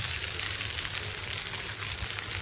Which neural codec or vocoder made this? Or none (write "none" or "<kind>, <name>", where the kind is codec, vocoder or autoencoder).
none